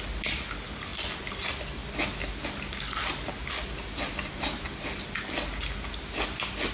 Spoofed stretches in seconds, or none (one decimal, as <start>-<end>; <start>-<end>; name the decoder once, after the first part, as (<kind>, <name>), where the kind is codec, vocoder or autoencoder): none